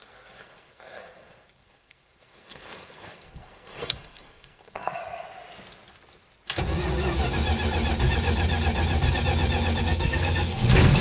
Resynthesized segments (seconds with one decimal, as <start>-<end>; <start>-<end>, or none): 0.0-5.0; 9.8-11.0